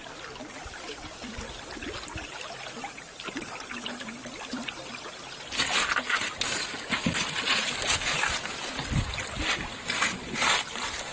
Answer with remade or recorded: recorded